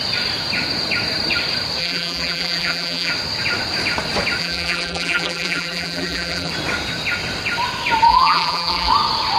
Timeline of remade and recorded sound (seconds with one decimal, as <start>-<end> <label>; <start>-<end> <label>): 0.0-1.8 recorded; 1.8-3.1 remade; 3.1-4.4 recorded; 4.4-6.5 remade; 6.5-8.1 recorded; 8.1-8.9 remade; 8.9-9.4 recorded